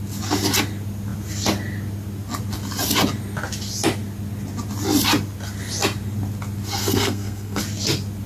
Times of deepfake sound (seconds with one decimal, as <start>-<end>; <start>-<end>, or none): 6.8-7.6